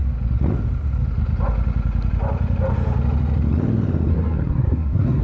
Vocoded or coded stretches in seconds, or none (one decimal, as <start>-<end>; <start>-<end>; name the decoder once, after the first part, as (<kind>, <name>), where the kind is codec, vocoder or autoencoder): 4.1-5.2 (codec, SNAC)